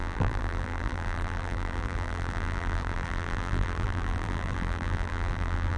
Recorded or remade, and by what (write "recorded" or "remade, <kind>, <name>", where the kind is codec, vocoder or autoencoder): remade, vocoder, BigVGAN v2